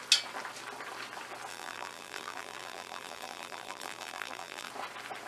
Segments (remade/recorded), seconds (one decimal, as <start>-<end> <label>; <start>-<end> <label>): 0.0-1.5 recorded; 1.5-4.7 remade; 4.7-5.3 recorded